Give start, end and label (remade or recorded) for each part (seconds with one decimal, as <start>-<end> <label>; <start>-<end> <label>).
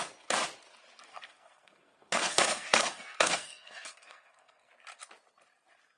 0.0-1.1 recorded; 1.1-4.7 remade; 4.7-6.0 recorded